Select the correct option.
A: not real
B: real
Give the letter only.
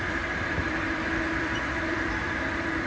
A